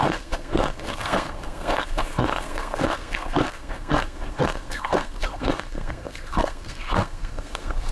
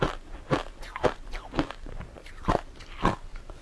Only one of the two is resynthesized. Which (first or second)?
first